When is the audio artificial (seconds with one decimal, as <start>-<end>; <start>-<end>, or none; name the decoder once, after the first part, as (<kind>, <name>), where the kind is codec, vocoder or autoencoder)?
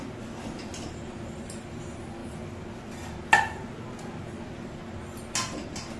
none